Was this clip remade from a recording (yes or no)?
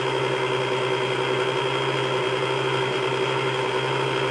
no